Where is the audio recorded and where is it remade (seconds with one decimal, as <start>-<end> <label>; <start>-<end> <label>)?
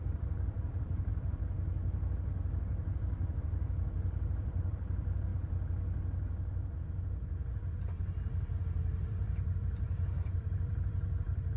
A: 0.0-1.1 remade; 1.1-3.4 recorded; 3.4-5.3 remade; 5.3-8.6 recorded; 8.6-11.6 remade